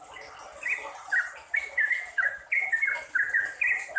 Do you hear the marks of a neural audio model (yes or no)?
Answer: no